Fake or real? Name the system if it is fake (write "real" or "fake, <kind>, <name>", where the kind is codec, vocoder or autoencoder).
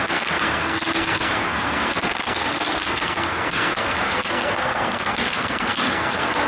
fake, codec, SNAC